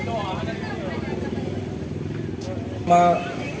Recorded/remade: recorded